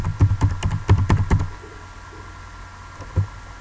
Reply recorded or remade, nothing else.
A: recorded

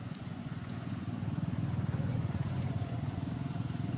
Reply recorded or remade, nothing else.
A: remade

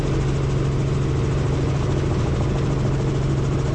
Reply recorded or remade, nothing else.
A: recorded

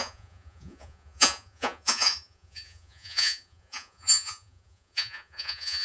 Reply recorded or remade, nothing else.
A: remade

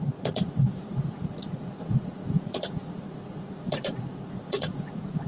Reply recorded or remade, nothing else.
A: remade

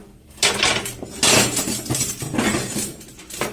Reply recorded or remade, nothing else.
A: recorded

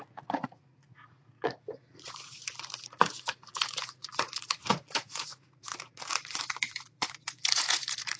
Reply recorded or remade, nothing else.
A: remade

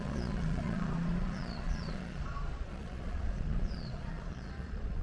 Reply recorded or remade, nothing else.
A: remade